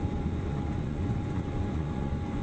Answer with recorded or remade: remade